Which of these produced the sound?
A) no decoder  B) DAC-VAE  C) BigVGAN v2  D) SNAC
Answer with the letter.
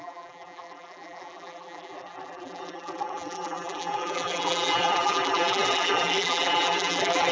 C